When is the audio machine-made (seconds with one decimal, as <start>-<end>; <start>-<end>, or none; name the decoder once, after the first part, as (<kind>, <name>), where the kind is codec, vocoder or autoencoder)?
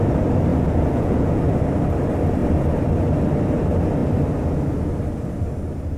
0.5-1.4 (vocoder, Vocos)